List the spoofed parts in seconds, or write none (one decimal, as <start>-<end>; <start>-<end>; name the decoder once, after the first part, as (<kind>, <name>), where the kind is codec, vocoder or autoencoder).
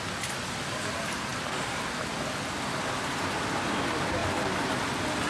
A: none